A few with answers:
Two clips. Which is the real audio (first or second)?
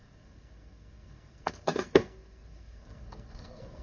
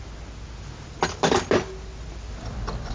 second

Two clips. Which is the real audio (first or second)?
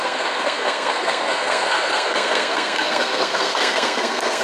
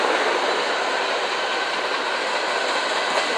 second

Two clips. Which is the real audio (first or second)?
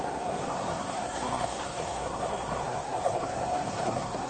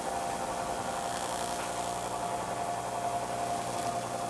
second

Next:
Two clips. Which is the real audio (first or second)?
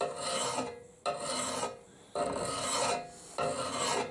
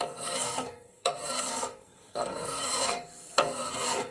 first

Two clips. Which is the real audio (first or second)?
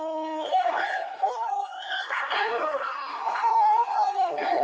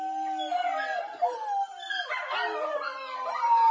second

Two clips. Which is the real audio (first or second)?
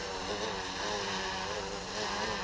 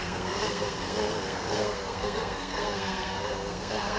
first